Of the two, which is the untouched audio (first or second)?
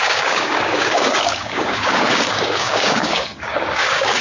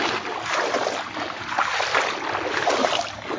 second